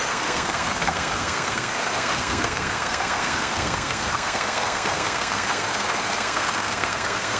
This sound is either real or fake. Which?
fake